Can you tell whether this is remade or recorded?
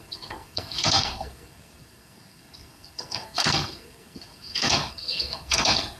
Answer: remade